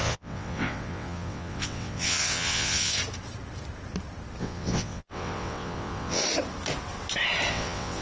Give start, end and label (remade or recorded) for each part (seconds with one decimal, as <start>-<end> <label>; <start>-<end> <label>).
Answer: 0.0-3.0 remade; 3.0-4.4 recorded; 4.4-6.2 remade; 6.2-7.5 recorded; 7.5-8.0 remade